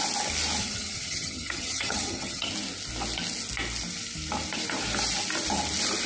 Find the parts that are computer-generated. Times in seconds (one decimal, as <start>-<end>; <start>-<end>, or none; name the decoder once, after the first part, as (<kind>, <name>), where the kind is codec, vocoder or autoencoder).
0.6-2.5 (vocoder, HiFi-GAN)